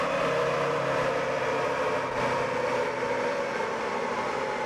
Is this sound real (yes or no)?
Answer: no